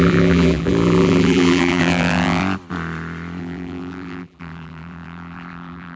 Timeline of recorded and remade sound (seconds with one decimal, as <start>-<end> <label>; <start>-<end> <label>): 0.0-2.4 remade; 2.4-3.4 recorded; 3.4-6.0 remade